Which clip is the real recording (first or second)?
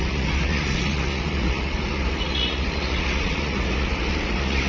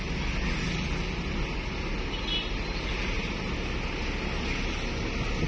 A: second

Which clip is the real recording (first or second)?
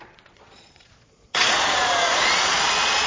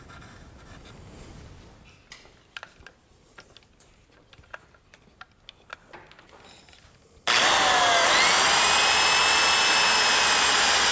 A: second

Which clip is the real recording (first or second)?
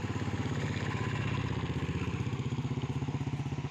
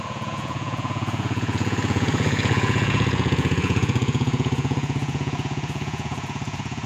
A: first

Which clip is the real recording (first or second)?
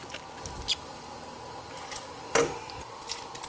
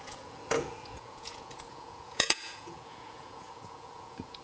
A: first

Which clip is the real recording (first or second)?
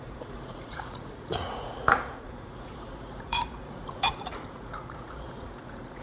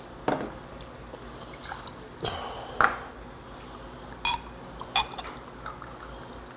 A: second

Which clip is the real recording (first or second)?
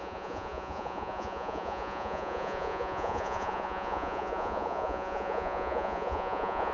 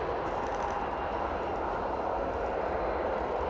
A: second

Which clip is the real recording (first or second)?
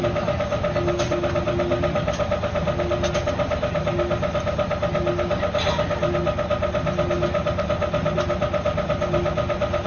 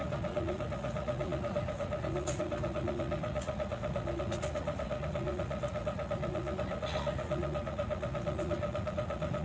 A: first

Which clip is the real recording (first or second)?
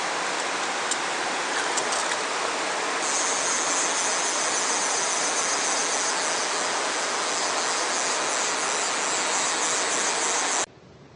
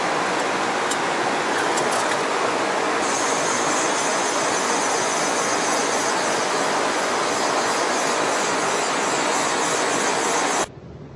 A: first